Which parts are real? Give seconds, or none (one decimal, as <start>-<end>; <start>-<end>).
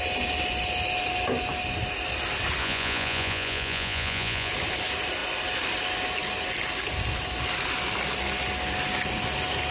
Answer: 0.0-2.6; 4.5-9.7